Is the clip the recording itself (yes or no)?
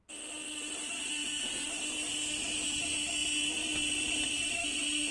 yes